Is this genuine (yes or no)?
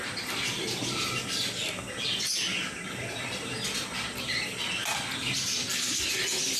yes